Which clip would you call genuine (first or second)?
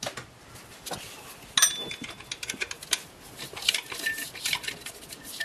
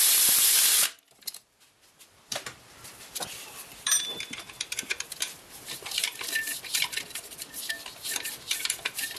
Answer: first